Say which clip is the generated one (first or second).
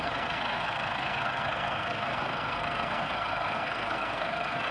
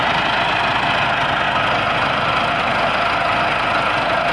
first